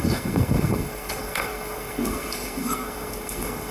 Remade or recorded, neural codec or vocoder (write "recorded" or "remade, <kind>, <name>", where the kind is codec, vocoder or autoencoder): remade, codec, SNAC